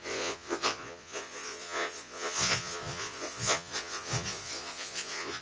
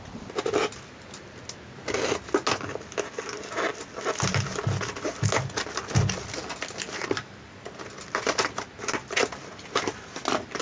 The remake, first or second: first